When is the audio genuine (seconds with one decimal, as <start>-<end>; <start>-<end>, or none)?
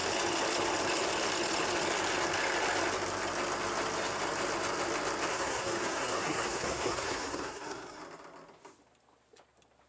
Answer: 0.0-5.3; 8.0-9.9